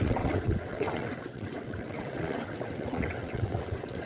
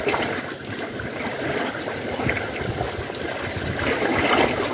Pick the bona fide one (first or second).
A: second